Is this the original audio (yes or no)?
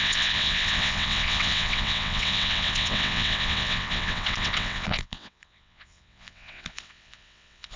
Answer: no